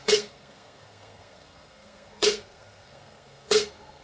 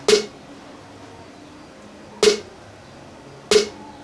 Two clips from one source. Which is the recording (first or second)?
second